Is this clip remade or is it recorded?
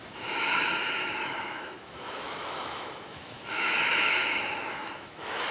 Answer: remade